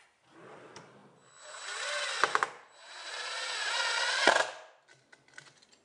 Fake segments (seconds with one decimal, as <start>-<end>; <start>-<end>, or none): none